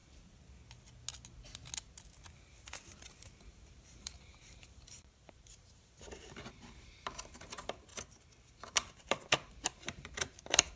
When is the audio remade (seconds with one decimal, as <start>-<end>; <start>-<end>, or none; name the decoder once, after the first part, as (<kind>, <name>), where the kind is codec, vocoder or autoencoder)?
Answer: 3.4-7.9 (vocoder, BigVGAN v2); 8.5-10.8